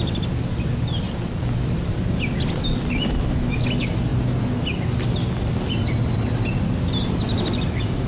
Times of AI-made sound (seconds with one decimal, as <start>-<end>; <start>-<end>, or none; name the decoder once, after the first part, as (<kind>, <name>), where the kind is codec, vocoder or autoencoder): none